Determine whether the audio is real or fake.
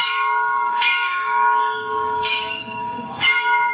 fake